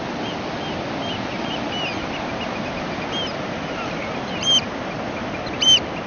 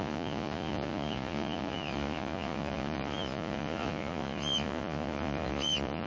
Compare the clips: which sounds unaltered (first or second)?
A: first